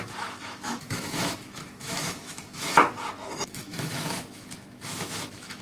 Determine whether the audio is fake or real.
fake